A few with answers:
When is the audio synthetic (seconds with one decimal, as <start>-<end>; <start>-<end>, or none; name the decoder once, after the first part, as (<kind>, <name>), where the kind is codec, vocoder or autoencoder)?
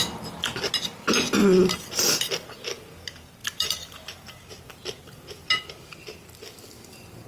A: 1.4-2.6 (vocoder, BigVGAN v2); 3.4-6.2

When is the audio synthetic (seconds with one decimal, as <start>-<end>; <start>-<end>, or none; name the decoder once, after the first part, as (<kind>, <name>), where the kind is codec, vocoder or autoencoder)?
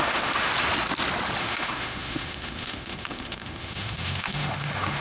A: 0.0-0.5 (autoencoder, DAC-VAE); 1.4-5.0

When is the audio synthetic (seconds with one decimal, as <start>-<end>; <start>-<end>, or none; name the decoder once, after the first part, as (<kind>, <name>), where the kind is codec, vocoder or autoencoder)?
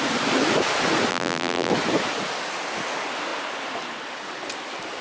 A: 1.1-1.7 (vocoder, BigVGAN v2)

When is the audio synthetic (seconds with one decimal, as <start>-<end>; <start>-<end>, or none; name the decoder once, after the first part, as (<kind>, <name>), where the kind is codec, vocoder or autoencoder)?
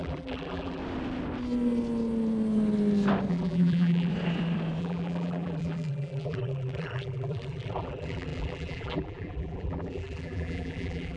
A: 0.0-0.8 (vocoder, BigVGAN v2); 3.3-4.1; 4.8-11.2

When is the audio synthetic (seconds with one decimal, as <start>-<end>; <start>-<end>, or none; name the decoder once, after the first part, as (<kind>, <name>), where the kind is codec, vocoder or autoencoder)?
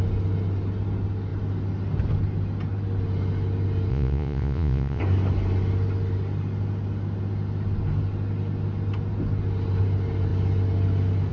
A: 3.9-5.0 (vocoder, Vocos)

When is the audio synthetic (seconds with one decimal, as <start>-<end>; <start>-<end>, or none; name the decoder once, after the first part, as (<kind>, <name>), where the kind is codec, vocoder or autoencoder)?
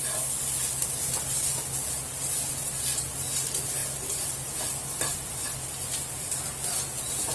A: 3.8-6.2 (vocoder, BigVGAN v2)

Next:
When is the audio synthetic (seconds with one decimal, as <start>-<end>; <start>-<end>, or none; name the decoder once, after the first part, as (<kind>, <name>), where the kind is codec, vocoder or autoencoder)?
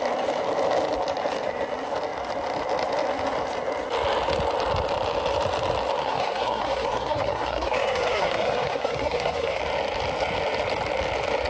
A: 6.0-9.6 (codec, SNAC)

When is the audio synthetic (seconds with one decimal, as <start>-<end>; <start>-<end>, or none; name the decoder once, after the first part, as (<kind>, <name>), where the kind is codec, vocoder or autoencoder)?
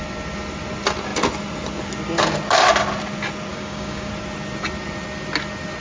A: 3.5-4.1 (codec, DAC)